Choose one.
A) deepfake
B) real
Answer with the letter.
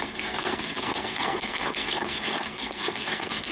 A